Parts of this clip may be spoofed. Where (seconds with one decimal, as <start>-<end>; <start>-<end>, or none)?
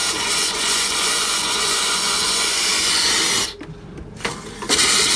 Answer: 0.0-3.1